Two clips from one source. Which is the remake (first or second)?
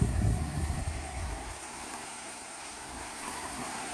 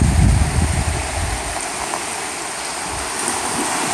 first